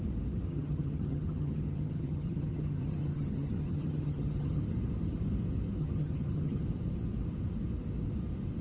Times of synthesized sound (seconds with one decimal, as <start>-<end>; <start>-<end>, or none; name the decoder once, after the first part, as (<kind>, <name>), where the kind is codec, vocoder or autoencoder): 0.5-4.6 (vocoder, HiFi-GAN); 5.8-6.6